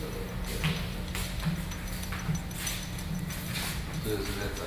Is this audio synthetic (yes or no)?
no